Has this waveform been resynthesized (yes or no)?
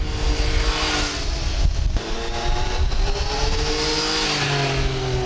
no